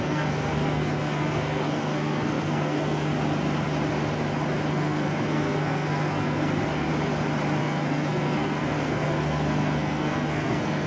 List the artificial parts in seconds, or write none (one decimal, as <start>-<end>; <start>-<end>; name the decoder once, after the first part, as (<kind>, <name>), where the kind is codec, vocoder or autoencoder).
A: 0.0-3.1 (codec, SNAC); 4.7-6.9; 7.6-10.9